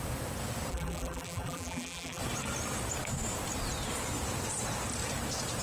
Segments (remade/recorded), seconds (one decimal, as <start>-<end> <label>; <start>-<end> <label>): 0.0-0.7 recorded; 0.7-2.2 remade; 2.2-5.6 recorded